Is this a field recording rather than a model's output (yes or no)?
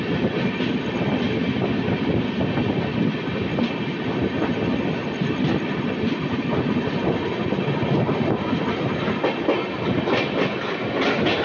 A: yes